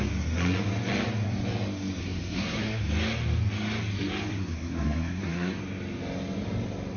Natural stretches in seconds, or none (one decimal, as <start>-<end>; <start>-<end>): 0.0-2.0; 2.8-4.3; 5.6-7.0